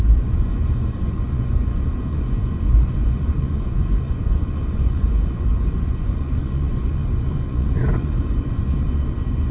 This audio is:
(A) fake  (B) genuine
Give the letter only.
A